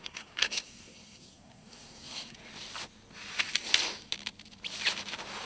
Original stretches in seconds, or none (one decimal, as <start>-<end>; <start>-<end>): 2.5-5.5